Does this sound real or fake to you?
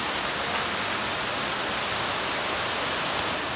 real